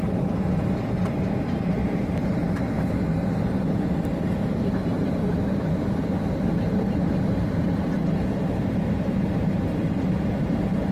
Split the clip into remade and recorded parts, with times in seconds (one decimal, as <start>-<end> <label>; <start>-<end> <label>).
0.0-10.9 remade